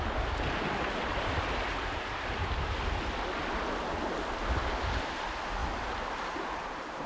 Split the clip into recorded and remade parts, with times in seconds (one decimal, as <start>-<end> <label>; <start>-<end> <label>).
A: 0.0-7.1 recorded